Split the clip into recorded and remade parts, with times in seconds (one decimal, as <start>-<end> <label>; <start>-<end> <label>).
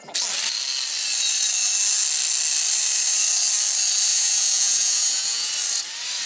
0.0-4.1 recorded; 4.1-5.5 remade; 5.5-6.3 recorded